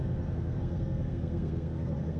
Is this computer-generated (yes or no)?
yes